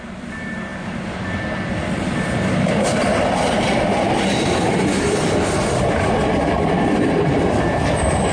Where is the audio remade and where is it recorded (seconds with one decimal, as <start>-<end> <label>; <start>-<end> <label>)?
0.0-8.3 remade